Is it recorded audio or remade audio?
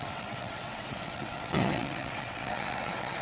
remade